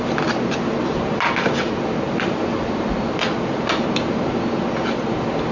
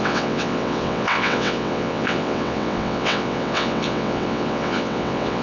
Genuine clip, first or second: first